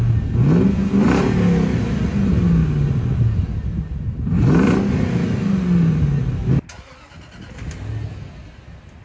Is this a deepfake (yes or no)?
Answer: no